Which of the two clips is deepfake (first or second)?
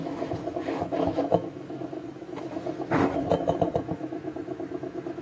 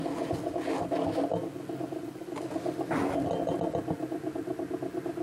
first